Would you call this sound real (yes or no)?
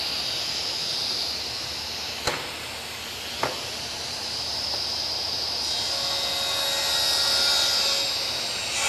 yes